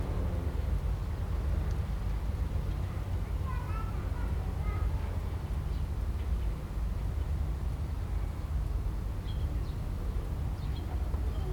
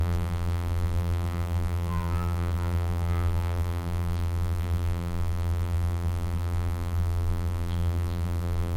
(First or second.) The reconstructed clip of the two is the second